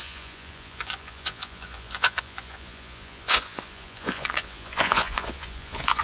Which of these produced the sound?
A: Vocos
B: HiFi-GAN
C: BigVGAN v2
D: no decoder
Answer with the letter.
A